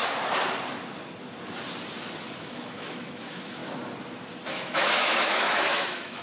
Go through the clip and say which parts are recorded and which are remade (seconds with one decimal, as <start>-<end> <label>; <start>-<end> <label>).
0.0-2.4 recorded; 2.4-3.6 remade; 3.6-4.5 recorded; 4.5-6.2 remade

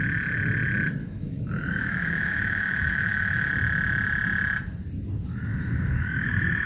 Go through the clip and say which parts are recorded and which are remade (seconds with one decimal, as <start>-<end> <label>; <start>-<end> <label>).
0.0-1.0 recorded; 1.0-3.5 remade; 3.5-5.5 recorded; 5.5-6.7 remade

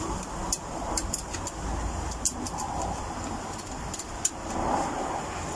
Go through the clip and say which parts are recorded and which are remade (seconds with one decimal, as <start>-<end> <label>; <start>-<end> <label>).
0.0-5.6 recorded

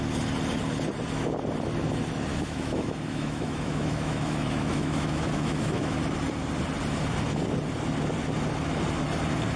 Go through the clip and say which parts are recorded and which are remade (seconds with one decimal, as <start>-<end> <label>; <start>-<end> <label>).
0.0-2.3 recorded; 2.3-6.0 remade; 6.0-9.6 recorded